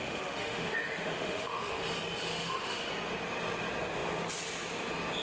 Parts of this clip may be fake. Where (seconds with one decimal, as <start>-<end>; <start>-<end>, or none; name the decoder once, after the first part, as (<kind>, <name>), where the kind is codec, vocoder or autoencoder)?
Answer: 0.0-1.8 (autoencoder, DAC-VAE); 2.3-2.9